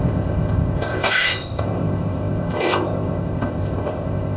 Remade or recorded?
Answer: remade